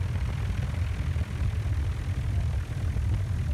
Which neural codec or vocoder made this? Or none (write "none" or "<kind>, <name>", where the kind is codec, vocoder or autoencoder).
none